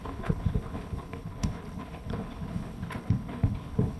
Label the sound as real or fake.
fake